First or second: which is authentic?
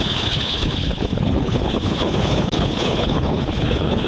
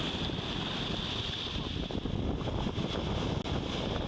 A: second